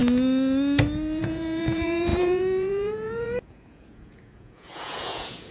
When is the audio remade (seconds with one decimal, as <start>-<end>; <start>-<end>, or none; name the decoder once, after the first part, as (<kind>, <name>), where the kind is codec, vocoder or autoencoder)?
1.2-5.5 (vocoder, Vocos)